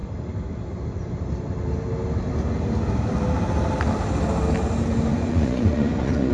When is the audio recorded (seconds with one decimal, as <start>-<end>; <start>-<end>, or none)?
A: 0.0-5.1